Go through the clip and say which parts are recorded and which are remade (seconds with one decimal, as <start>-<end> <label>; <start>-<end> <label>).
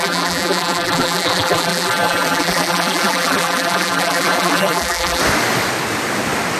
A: 0.0-5.2 remade; 5.2-6.6 recorded